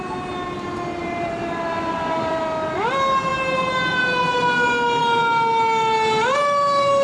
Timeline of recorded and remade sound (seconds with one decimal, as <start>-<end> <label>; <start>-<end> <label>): 0.0-1.0 recorded; 1.0-2.9 remade; 2.9-7.0 recorded